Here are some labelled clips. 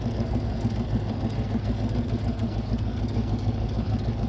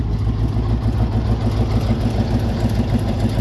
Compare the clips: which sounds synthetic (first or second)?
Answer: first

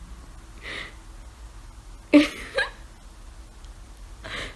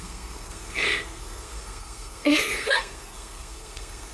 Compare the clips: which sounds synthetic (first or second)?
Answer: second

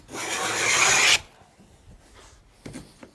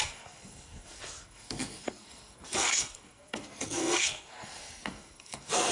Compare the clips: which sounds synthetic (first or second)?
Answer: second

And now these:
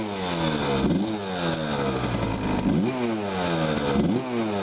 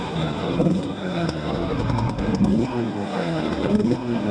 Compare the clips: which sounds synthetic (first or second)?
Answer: second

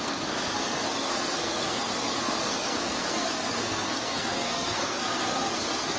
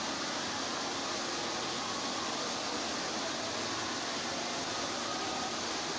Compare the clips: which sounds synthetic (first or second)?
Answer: first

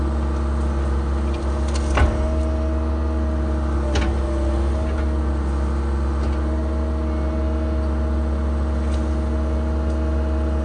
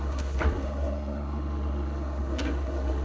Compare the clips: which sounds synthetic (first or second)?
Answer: second